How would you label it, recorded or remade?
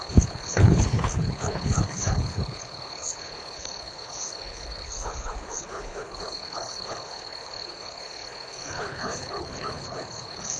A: remade